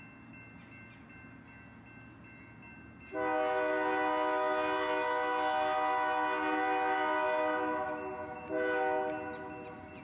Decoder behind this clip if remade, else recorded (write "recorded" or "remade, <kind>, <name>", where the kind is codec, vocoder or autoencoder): recorded